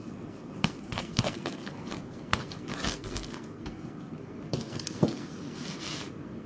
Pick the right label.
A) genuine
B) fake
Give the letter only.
B